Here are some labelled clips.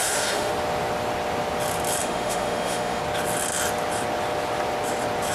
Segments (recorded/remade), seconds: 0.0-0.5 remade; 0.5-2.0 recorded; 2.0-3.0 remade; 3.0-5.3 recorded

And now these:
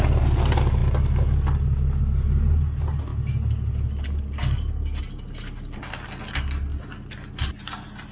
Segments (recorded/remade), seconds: 0.0-6.7 recorded; 6.7-7.3 remade; 7.3-8.1 recorded